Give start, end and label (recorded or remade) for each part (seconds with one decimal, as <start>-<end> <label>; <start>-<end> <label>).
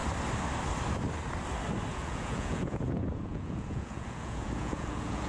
0.0-1.9 recorded; 1.9-5.3 remade